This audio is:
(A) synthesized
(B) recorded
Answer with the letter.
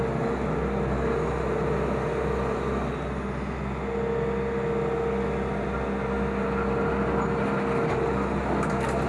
B